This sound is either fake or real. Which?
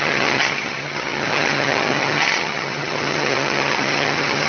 fake